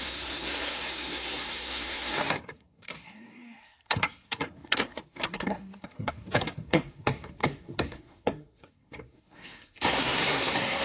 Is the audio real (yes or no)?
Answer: no